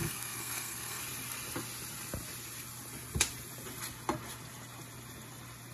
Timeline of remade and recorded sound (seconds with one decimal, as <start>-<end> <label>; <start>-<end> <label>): 0.0-1.0 remade; 1.0-5.7 recorded